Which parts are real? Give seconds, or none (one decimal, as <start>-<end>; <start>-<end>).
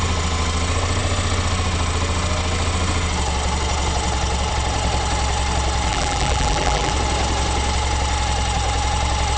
0.0-5.9; 6.9-9.4